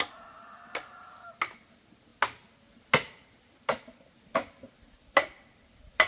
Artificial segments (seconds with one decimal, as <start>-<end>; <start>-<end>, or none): none